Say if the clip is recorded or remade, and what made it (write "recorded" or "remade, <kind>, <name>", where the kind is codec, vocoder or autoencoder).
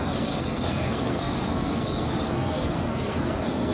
remade, codec, SNAC